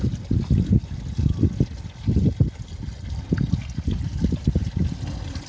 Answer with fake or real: real